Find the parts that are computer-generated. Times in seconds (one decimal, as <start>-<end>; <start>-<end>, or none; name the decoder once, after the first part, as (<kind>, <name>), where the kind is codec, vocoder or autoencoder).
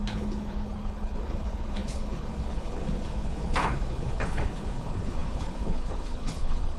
0.0-6.8 (codec, HILCodec)